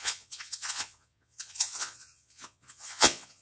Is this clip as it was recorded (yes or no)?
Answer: no